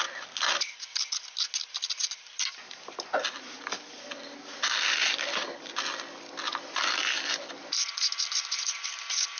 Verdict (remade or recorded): recorded